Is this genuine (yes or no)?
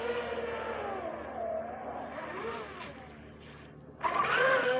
yes